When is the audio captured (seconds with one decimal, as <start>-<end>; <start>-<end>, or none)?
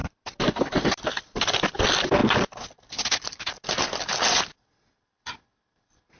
0.0-6.2